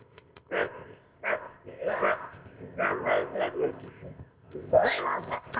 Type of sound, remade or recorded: remade